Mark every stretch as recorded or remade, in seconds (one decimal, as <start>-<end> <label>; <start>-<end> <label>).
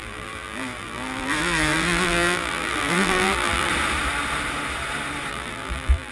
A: 0.0-3.7 remade; 3.7-5.3 recorded; 5.3-6.1 remade